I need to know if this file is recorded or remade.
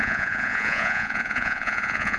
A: remade